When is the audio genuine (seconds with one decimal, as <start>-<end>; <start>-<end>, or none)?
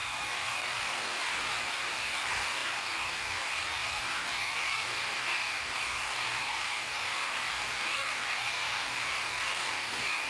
none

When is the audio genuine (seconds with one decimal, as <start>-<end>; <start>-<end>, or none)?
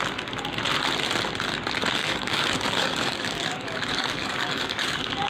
0.0-2.0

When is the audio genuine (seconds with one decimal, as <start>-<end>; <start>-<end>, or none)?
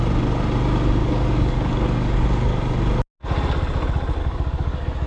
0.0-1.0; 2.6-4.2